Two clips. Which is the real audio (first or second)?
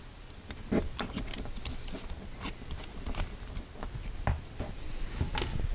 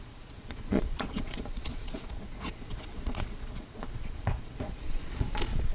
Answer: first